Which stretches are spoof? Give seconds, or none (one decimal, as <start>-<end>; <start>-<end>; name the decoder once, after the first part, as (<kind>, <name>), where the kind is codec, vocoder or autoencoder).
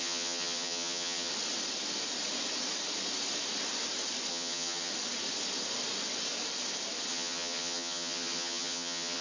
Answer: 0.0-1.3 (vocoder, HiFi-GAN); 4.3-4.9; 7.1-9.2